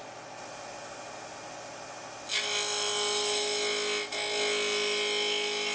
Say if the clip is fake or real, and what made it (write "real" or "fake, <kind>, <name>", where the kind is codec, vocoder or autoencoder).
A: real